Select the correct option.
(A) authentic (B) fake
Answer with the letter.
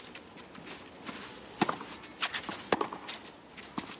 A